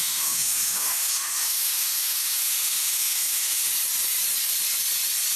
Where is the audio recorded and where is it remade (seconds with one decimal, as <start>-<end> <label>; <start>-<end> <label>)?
0.0-3.7 remade; 3.7-5.4 recorded